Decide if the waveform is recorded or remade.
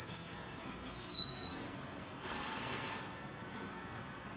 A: remade